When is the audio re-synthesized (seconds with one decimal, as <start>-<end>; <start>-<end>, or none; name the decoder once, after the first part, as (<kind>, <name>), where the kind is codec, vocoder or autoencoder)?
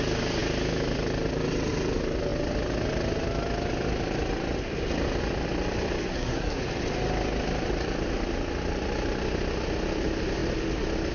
6.1-6.6 (codec, SNAC)